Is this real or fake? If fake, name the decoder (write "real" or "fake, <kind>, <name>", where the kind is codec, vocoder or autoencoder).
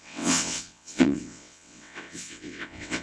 fake, vocoder, WaveNeXt